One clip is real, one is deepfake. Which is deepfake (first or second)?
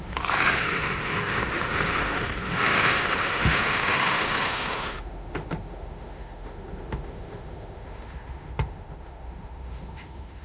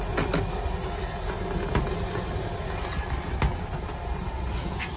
first